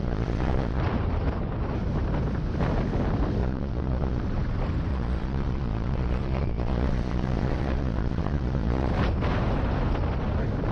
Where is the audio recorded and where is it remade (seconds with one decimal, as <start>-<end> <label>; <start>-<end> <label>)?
0.0-0.8 remade; 0.8-3.4 recorded; 3.4-4.2 remade; 4.2-4.9 recorded; 4.9-8.9 remade; 8.9-10.7 recorded